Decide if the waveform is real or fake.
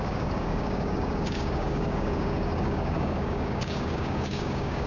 fake